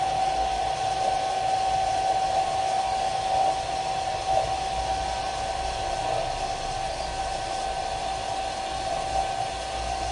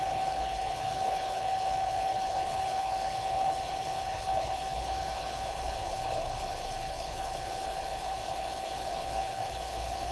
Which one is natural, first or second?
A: first